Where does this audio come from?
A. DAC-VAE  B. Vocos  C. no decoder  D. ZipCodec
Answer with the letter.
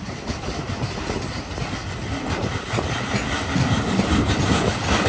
C